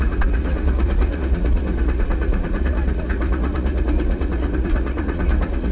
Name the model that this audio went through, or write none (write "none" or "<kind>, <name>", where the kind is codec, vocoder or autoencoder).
vocoder, Vocos